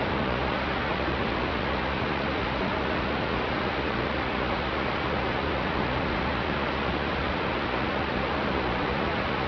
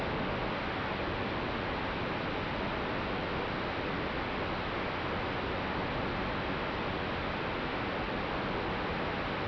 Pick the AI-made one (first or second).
first